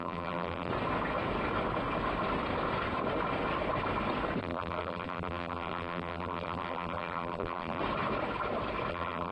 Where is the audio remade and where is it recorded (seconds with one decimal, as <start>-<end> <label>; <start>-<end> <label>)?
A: 0.0-0.7 remade; 0.7-4.4 recorded; 4.4-7.8 remade; 7.8-8.9 recorded; 8.9-9.3 remade